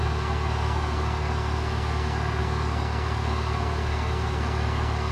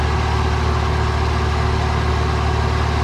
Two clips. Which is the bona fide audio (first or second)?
second